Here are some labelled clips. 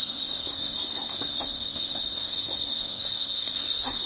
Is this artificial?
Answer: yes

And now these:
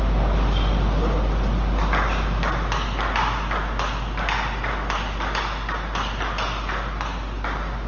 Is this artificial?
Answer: no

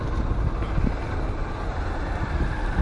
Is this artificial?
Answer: no